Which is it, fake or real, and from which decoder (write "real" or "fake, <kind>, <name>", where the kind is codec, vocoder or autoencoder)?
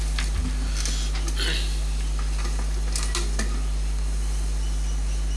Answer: real